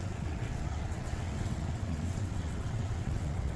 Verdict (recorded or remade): remade